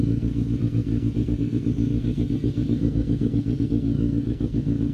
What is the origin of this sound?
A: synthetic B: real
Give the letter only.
A